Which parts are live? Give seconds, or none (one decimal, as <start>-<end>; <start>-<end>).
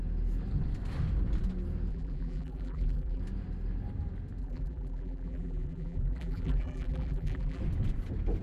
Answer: 0.0-1.9; 3.2-4.4; 7.6-8.4